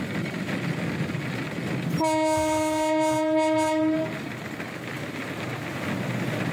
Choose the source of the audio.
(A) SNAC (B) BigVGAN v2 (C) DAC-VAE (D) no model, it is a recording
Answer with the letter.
D